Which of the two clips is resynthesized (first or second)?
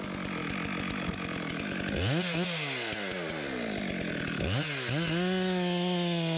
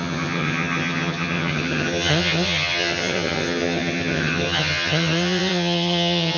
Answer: second